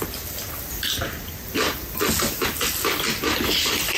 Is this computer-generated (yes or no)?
no